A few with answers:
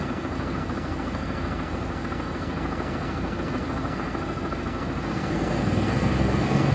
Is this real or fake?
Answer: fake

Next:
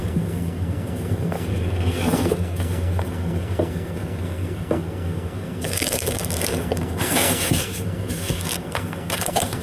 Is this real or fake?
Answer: fake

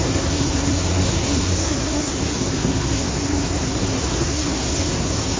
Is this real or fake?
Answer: fake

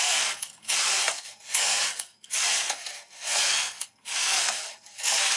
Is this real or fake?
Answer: fake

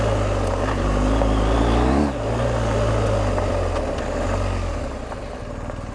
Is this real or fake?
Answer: real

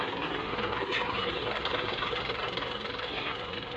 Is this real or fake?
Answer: fake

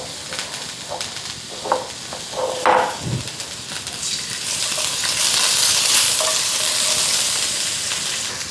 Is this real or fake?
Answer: real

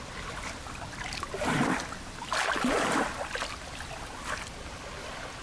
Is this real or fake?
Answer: real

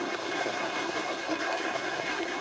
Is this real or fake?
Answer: fake